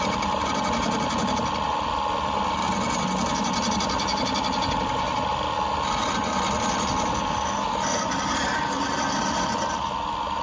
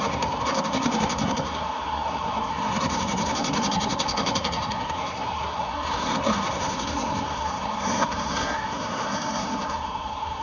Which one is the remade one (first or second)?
second